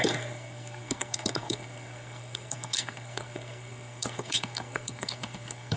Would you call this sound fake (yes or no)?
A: yes